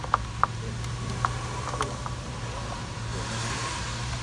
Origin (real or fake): real